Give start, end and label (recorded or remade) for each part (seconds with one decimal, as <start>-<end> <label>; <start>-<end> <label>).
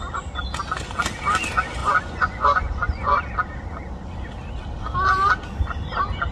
0.0-1.8 recorded; 1.8-3.2 remade; 3.2-6.3 recorded